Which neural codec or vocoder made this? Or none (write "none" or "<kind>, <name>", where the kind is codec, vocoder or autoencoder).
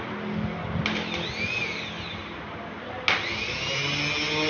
none